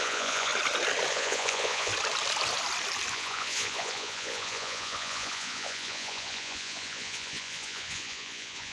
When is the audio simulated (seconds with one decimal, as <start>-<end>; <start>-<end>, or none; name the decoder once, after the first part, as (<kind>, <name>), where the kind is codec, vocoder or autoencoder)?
0.0-0.5 (vocoder, Vocos); 1.1-1.9; 3.1-8.7